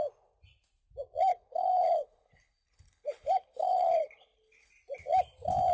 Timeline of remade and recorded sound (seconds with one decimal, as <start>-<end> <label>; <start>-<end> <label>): 0.0-1.3 recorded; 1.3-4.7 remade; 4.7-5.7 recorded